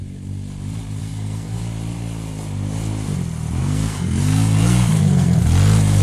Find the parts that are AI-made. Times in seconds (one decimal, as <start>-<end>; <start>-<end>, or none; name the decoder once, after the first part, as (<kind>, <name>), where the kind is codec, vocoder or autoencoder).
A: 1.0-1.6 (codec, SNAC); 3.6-5.4